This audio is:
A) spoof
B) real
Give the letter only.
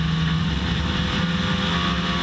B